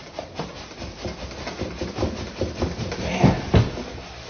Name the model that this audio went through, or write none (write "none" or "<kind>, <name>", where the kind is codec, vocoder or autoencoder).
none